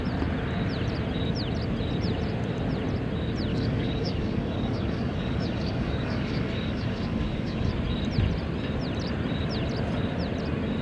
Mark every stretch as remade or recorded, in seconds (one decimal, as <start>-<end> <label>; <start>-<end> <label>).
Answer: 0.0-3.5 recorded; 3.5-7.7 remade; 7.7-10.8 recorded